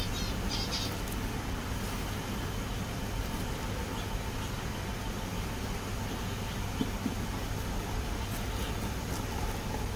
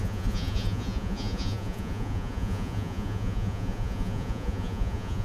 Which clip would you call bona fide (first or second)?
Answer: first